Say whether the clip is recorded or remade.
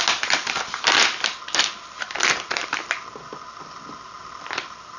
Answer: recorded